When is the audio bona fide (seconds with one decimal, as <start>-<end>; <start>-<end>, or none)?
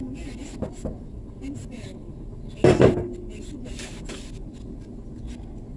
0.0-5.8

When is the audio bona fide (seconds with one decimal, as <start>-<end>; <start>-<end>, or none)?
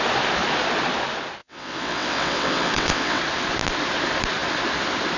0.0-1.4; 3.2-5.2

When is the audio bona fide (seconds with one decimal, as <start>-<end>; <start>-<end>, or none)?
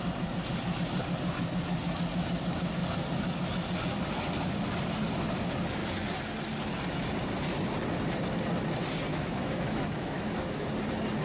0.0-9.1; 10.7-11.2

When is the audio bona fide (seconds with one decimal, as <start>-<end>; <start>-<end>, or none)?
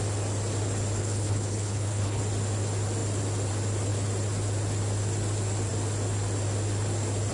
0.0-1.0; 2.2-7.3